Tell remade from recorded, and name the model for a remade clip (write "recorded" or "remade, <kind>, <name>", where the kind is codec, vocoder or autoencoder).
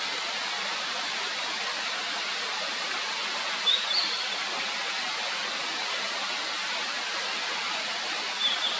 recorded